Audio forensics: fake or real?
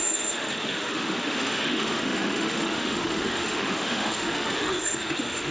fake